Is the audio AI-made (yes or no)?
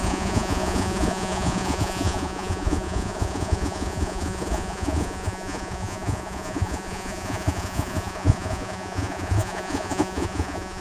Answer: yes